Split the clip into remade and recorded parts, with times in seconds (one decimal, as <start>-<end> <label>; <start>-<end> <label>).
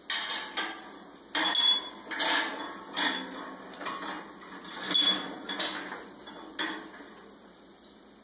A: 0.0-8.2 recorded